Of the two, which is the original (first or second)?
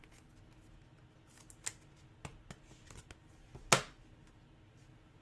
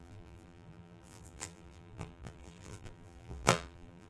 first